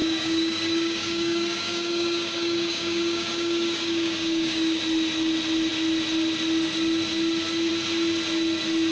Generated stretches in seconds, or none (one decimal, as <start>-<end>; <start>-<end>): 0.0-4.8